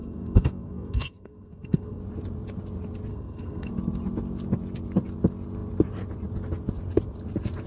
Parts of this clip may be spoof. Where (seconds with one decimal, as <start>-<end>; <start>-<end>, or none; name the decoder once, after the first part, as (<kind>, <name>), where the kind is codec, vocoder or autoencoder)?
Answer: 0.0-2.0 (codec, SNAC); 3.1-3.7